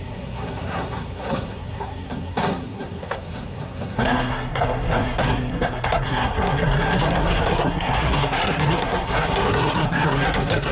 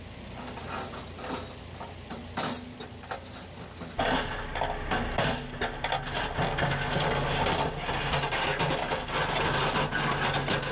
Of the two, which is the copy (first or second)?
first